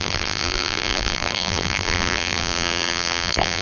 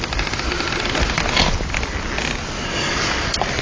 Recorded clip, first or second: second